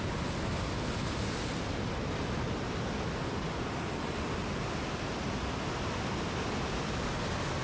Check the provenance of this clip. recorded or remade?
recorded